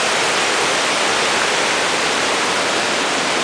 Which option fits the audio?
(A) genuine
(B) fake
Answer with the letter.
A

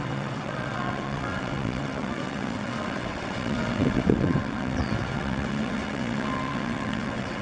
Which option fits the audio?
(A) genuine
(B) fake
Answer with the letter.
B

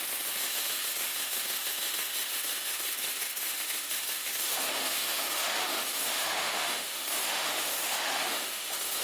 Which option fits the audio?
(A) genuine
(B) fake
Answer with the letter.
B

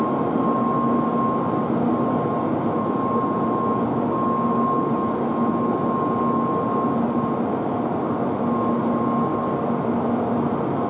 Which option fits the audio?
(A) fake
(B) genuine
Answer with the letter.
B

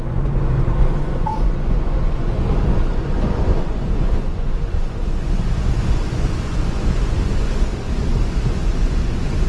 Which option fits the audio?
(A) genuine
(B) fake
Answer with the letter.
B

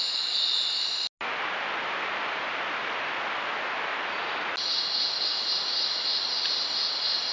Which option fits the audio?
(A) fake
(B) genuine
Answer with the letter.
B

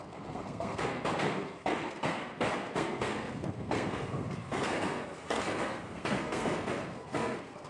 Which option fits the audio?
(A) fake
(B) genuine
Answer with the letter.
A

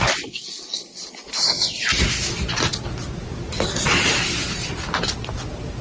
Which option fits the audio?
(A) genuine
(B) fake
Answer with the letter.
A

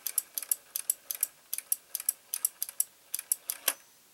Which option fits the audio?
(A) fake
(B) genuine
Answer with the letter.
B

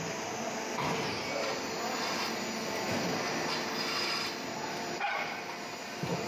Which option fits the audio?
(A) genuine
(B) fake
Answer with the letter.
A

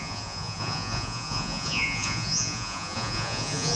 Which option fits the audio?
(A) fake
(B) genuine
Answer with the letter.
A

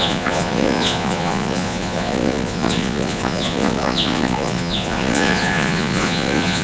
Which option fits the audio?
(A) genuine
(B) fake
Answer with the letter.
B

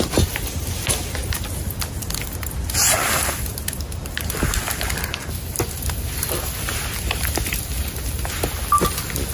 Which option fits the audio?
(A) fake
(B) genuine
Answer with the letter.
B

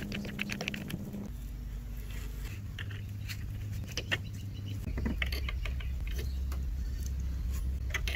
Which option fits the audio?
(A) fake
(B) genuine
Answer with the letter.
B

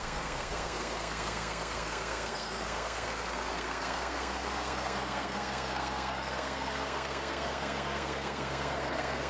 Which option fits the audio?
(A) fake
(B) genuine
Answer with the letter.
A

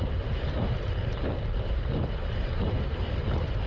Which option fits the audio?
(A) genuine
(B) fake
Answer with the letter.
B